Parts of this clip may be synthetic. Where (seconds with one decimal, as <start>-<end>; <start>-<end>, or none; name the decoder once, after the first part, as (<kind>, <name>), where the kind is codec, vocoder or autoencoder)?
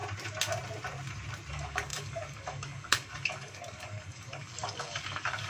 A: 1.5-5.5 (codec, DAC)